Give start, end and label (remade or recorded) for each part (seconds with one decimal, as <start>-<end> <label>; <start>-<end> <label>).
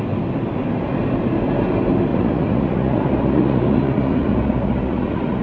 0.0-2.1 recorded; 2.1-5.4 remade